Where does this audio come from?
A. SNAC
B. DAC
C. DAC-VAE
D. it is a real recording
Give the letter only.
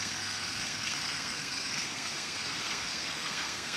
A